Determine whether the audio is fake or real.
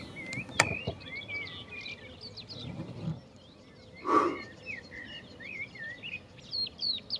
real